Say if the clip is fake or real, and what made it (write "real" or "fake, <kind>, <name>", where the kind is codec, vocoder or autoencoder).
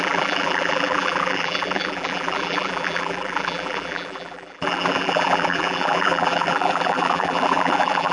fake, vocoder, BigVGAN v2